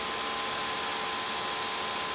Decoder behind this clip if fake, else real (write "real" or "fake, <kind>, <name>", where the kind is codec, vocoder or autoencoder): real